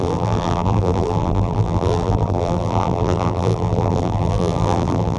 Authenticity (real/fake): fake